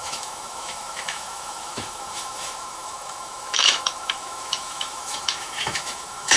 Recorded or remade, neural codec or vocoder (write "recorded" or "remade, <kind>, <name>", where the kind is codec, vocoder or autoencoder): remade, autoencoder, DAC-VAE